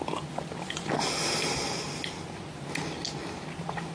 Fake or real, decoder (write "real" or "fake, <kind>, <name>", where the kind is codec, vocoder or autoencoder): real